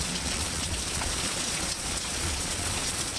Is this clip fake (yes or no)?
yes